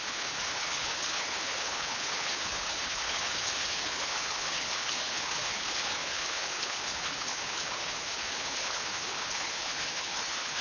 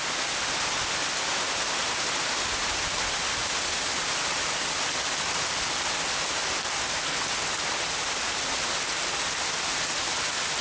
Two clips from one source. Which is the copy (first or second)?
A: first